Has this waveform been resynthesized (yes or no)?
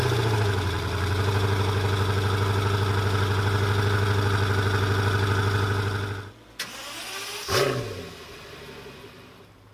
no